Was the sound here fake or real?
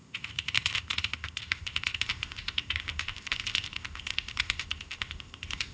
fake